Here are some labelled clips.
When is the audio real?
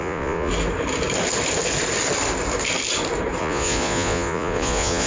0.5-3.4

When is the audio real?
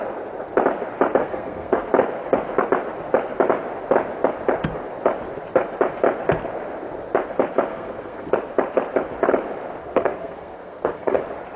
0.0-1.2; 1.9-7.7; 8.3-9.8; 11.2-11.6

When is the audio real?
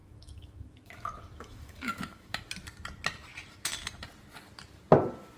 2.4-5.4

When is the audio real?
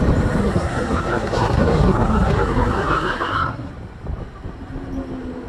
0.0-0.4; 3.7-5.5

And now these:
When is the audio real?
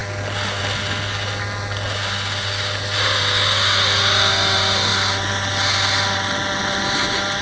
0.0-7.4